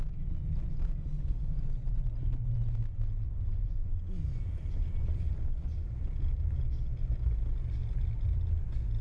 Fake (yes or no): no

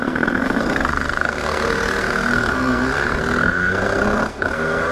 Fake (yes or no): yes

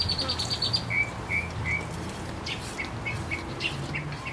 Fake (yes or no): no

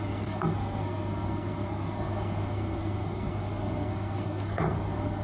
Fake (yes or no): yes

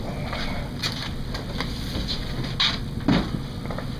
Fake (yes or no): no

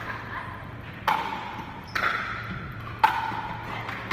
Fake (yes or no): no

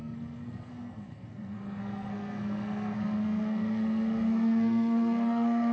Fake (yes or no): yes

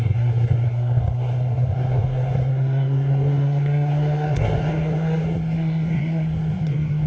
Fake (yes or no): yes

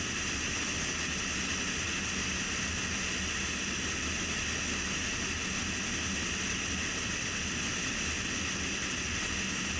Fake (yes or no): no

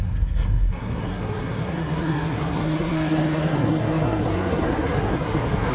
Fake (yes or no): yes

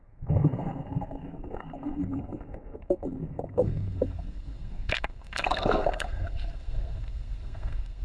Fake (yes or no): yes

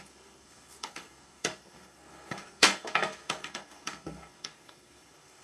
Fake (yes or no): yes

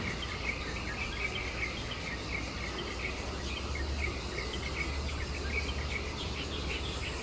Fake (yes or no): no